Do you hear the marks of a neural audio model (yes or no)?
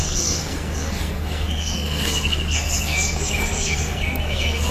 yes